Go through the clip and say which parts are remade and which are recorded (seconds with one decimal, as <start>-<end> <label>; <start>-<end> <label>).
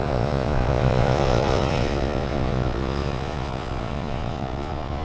0.0-5.0 remade